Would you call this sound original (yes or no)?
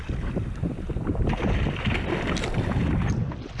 yes